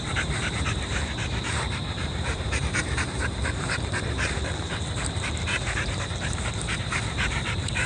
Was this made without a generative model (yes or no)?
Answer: no